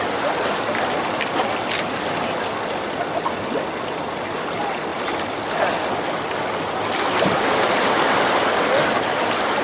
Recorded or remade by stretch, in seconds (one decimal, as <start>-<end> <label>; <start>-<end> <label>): 0.0-9.6 recorded